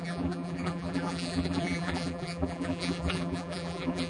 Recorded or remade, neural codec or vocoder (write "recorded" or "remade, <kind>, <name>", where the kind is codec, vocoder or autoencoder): remade, vocoder, BigVGAN v2